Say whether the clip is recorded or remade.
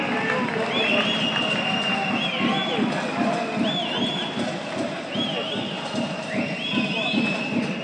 recorded